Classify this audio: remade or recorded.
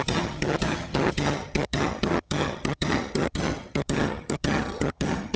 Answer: remade